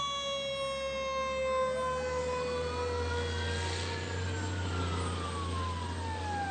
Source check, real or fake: real